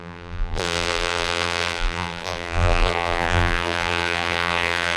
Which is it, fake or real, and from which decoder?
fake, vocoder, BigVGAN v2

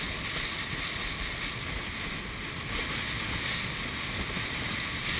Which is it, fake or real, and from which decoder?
real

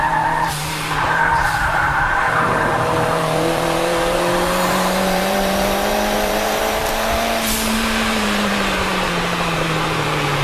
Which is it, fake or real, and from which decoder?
fake, vocoder, BigVGAN v2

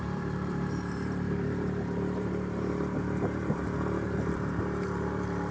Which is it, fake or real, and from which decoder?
fake, vocoder, BigVGAN v2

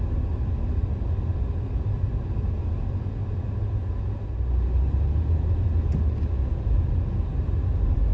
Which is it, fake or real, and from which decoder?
real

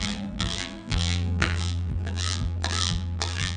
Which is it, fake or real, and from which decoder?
fake, vocoder, BigVGAN v2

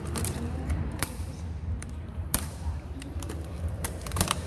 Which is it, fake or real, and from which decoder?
fake, vocoder, BigVGAN v2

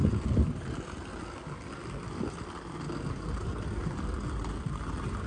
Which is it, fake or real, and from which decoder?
real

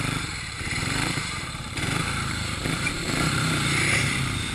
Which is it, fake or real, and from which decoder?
fake, vocoder, BigVGAN v2